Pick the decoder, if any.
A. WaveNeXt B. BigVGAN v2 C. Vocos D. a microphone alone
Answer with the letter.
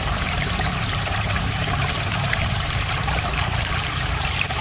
B